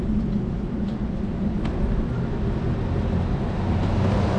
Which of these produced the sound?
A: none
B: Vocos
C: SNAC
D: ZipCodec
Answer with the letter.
A